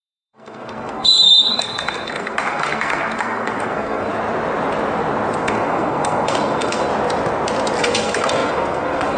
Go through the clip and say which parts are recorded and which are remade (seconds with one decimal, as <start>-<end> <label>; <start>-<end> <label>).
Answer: 0.0-4.1 remade; 4.1-5.4 recorded; 5.4-6.9 remade; 6.9-7.8 recorded; 7.8-9.2 remade